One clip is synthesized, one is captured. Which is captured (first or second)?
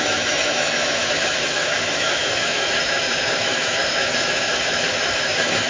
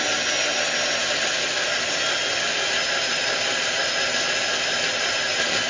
second